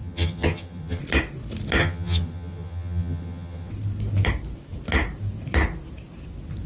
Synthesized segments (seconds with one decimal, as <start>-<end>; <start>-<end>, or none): 0.0-1.0; 1.8-3.7